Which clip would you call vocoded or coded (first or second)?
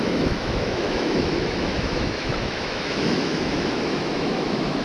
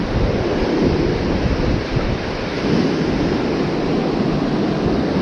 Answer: first